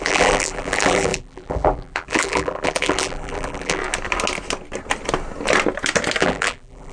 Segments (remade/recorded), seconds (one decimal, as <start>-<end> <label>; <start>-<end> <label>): 0.0-3.8 remade; 3.8-6.2 recorded; 6.2-6.9 remade